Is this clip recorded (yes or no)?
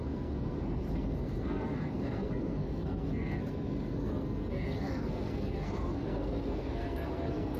no